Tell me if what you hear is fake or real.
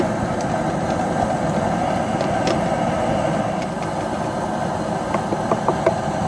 real